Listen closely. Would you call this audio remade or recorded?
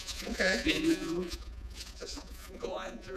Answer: remade